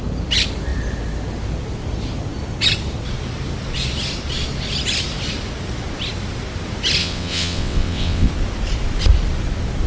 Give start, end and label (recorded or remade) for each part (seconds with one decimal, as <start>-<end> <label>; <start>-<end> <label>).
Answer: 0.0-7.0 recorded; 7.0-8.3 remade; 8.3-9.9 recorded